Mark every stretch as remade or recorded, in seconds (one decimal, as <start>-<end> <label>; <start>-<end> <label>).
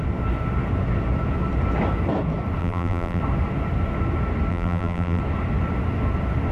0.0-2.6 recorded; 2.6-3.2 remade; 3.2-4.5 recorded; 4.5-5.2 remade; 5.2-6.5 recorded